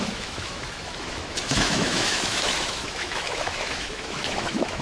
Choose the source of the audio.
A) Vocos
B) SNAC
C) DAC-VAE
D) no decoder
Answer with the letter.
C